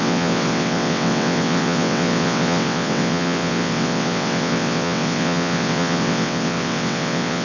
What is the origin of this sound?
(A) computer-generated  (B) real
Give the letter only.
A